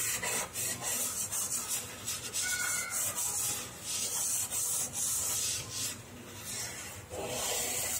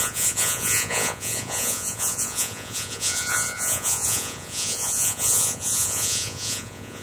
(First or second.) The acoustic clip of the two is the first